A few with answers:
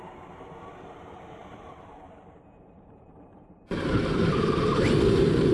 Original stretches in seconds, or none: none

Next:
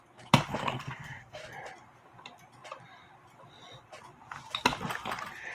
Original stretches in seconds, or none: 0.0-0.5; 1.4-5.5

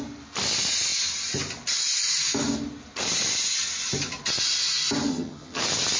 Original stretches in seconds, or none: 0.0-5.1; 5.6-6.0

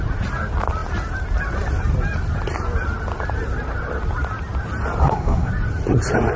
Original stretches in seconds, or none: 0.0-5.0; 5.5-6.4

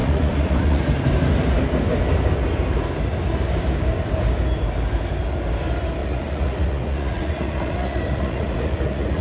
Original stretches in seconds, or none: 0.8-6.0

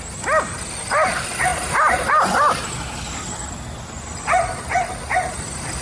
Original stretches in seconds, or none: 0.0-5.8